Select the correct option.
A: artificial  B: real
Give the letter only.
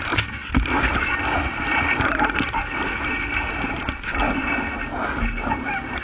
B